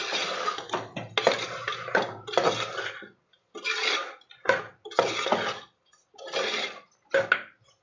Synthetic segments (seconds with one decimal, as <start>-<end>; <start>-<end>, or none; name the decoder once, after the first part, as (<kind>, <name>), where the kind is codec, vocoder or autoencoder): none